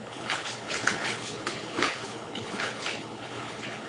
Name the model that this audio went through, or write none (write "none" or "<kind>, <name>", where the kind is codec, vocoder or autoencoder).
codec, HILCodec